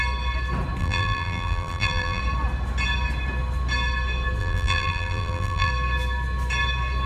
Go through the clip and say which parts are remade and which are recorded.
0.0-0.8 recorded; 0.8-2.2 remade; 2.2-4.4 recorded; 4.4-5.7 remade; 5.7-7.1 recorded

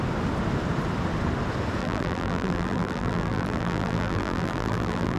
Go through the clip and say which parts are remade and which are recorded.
0.0-1.8 recorded; 1.8-5.2 remade

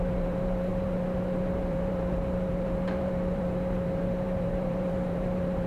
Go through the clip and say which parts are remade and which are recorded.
0.0-5.7 remade

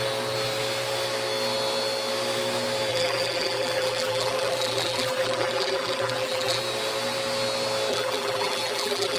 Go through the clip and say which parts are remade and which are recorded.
0.0-2.9 recorded; 2.9-6.6 remade; 6.6-7.9 recorded; 7.9-9.2 remade